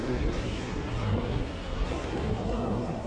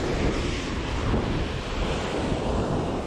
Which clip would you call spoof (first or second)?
first